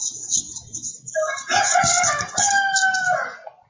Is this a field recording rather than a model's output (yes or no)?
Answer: yes